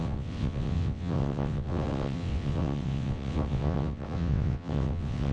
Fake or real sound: fake